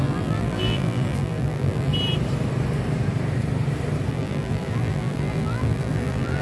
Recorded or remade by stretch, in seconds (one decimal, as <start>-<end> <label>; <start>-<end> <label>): 0.0-1.9 remade; 1.9-4.1 recorded; 4.1-6.4 remade